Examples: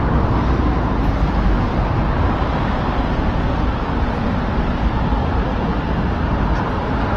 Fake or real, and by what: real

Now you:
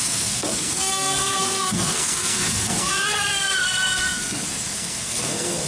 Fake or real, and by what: fake, codec, SNAC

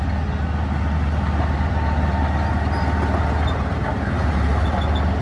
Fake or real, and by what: real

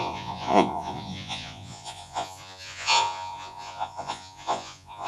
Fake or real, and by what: fake, vocoder, Vocos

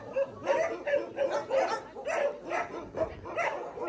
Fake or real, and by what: real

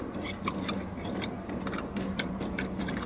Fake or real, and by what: real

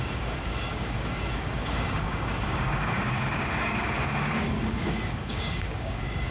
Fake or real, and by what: fake, codec, DAC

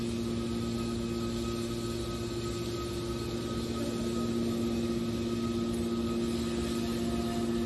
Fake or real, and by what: real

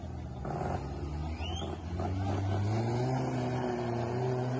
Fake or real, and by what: real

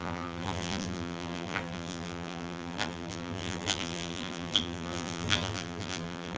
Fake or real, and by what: fake, vocoder, BigVGAN v2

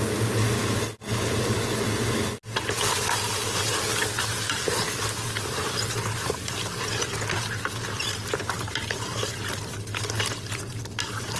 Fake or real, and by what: real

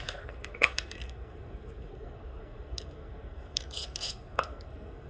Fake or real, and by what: fake, codec, SNAC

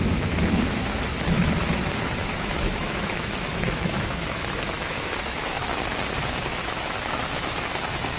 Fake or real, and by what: fake, autoencoder, DAC-VAE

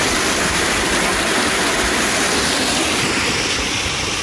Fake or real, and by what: real